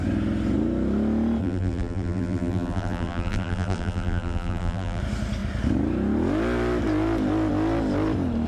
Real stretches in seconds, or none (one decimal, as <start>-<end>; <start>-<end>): 0.0-1.4; 5.0-8.5